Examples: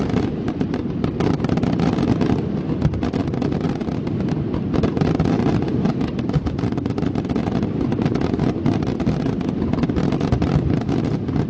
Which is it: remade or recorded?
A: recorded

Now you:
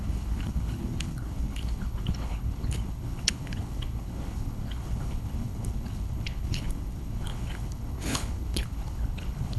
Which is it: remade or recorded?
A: remade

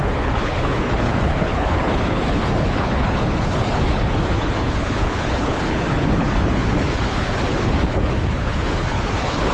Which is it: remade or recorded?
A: remade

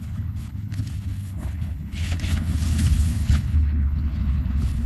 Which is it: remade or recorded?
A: remade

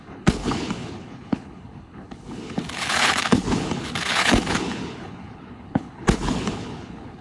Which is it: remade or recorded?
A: remade